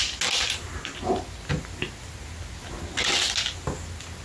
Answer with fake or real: real